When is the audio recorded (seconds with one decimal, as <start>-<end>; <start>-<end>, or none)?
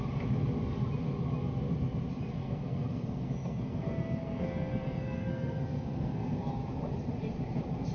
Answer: 0.0-2.4; 6.5-7.9